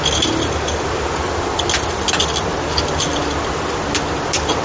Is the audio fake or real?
real